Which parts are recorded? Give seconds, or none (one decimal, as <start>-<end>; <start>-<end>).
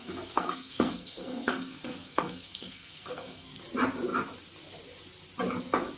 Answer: 3.6-6.0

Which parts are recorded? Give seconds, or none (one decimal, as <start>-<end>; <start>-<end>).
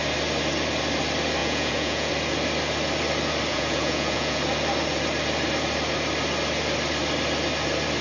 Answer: 0.0-1.4; 2.1-3.5; 4.4-8.0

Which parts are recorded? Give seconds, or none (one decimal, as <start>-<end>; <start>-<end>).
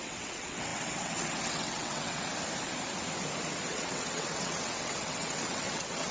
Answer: 2.3-3.7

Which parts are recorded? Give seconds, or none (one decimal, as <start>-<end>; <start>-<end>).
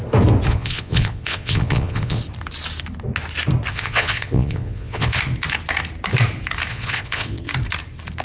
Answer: 0.0-0.5; 2.2-3.7; 5.2-6.7; 7.5-8.2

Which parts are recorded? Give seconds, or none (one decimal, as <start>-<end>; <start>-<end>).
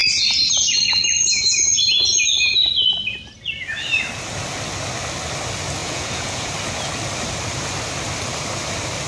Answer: 0.0-5.8; 6.5-9.1